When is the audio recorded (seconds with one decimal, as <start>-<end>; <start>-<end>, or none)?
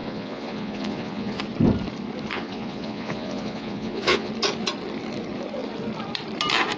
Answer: 1.4-2.3; 4.3-6.8